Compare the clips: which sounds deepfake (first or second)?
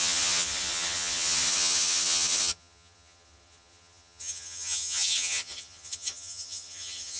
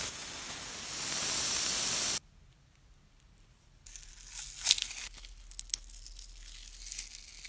first